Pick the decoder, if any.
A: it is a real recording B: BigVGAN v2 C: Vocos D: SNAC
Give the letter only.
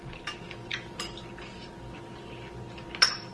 A